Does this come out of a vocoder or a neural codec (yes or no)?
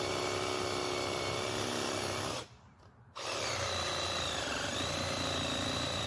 no